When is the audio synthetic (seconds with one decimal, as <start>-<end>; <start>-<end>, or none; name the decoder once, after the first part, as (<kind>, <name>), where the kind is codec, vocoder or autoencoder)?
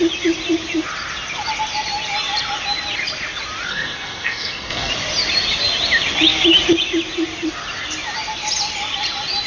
3.7-4.9 (codec, SNAC)